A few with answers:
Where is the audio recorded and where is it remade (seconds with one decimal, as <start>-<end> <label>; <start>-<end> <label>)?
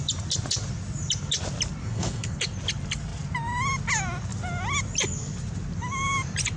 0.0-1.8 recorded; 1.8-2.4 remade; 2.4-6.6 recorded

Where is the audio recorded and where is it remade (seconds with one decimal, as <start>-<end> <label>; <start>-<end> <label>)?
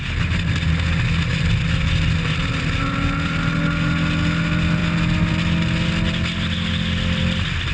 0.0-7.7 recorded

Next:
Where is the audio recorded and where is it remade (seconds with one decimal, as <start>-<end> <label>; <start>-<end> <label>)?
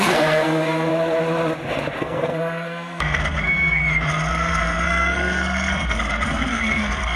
0.0-0.9 remade; 0.9-2.0 recorded; 2.0-3.8 remade; 3.8-4.3 recorded; 4.3-7.2 remade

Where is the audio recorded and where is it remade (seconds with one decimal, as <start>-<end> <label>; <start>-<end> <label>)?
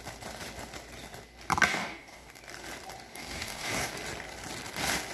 0.0-1.7 recorded; 1.7-2.4 remade; 2.4-3.1 recorded; 3.1-3.9 remade; 3.9-5.1 recorded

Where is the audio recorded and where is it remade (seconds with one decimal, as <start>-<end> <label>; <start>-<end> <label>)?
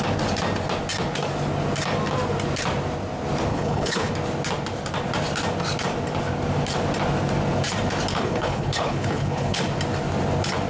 0.0-3.5 recorded; 3.5-4.1 remade; 4.1-8.1 recorded; 8.1-9.6 remade; 9.6-10.7 recorded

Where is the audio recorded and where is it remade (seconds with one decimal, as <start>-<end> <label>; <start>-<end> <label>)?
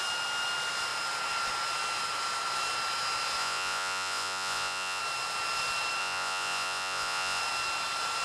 0.0-3.4 recorded; 3.4-5.0 remade; 5.0-6.0 recorded; 6.0-7.4 remade; 7.4-8.2 recorded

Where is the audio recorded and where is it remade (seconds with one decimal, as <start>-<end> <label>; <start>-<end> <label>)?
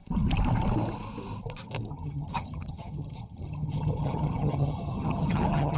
0.0-1.9 recorded; 1.9-5.8 remade